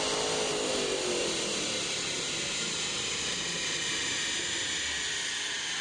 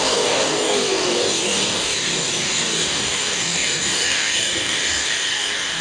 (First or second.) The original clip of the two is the first